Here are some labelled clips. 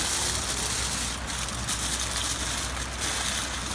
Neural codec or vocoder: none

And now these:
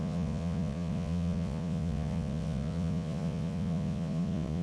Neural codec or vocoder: vocoder, Vocos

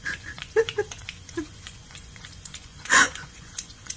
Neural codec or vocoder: vocoder, Vocos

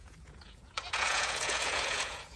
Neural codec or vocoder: vocoder, Vocos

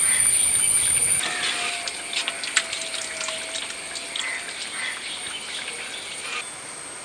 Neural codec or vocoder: none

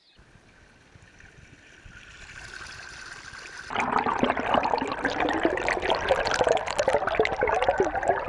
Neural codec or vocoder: none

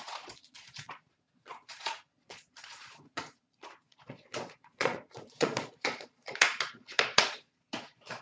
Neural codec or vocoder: vocoder, Vocos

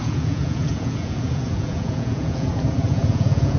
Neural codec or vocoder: vocoder, Vocos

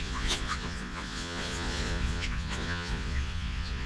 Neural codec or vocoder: vocoder, Vocos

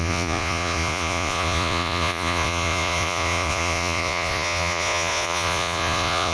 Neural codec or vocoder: vocoder, Vocos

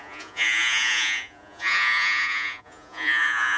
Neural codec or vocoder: vocoder, Vocos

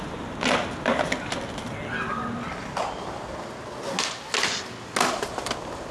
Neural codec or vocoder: none